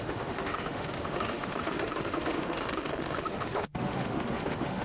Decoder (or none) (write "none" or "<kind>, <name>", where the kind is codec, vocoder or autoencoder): autoencoder, DAC-VAE